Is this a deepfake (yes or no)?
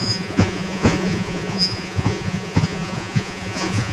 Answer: yes